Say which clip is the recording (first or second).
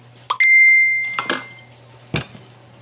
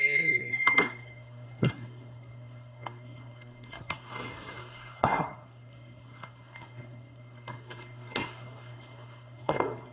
first